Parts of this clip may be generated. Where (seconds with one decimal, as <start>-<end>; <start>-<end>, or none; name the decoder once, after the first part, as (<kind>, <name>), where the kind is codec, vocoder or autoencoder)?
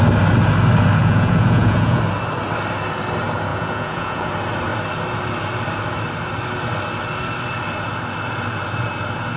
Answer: 1.0-2.0 (vocoder, Vocos); 3.5-4.3